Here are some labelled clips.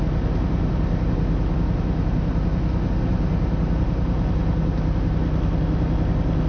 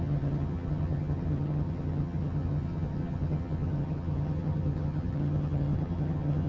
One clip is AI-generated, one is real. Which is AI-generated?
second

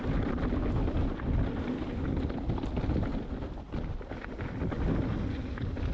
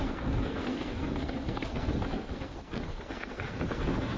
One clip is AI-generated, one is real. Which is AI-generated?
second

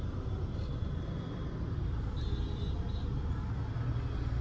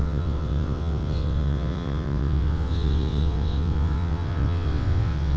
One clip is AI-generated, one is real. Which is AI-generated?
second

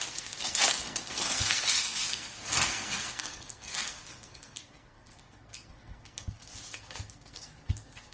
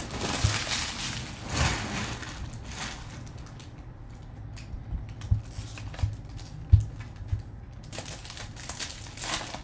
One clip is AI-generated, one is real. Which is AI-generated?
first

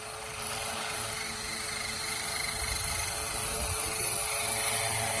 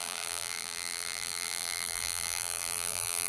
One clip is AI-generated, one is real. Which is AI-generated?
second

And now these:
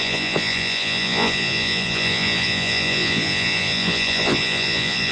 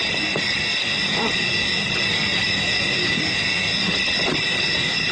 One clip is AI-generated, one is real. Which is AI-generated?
first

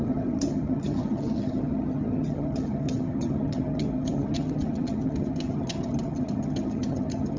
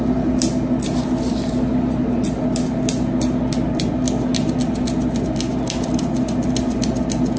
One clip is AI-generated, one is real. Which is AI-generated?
first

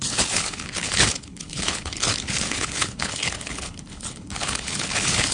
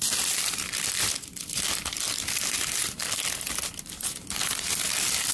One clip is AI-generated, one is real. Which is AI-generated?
first